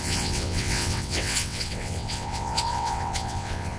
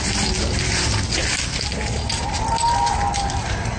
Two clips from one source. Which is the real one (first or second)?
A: second